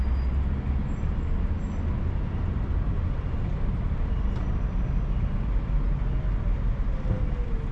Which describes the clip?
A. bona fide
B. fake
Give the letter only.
A